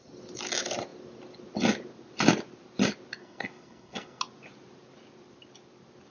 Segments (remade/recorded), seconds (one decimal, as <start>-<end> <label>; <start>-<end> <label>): 0.0-3.2 recorded; 3.2-4.2 remade; 4.2-6.1 recorded